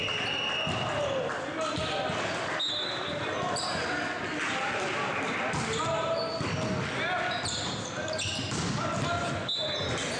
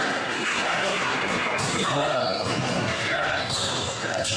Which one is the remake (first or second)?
second